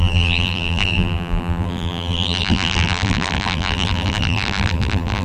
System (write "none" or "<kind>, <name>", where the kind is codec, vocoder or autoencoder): vocoder, BigVGAN v2